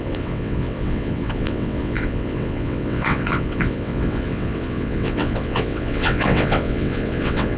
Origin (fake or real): fake